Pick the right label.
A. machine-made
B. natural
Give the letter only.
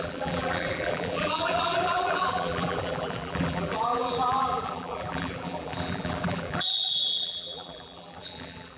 A